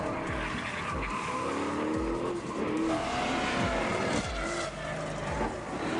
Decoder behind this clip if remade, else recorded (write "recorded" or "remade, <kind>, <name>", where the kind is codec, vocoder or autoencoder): recorded